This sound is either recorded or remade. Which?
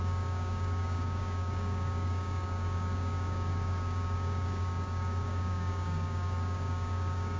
remade